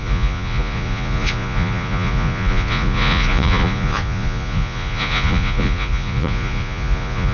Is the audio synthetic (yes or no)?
yes